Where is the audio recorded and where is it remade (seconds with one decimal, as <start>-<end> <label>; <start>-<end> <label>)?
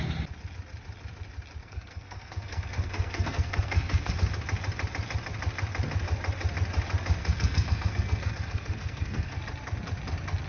0.0-1.6 recorded; 1.6-4.1 remade; 4.1-7.2 recorded; 7.2-9.4 remade; 9.4-10.5 recorded